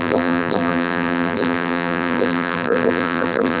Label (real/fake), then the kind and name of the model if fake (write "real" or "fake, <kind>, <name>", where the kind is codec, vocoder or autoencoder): fake, vocoder, BigVGAN v2